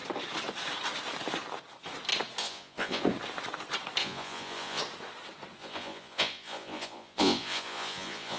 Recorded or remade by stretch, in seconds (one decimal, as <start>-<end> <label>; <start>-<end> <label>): 0.0-2.4 recorded; 2.4-3.0 remade; 3.0-4.0 recorded; 4.0-4.8 remade; 4.8-5.6 recorded; 5.6-8.4 remade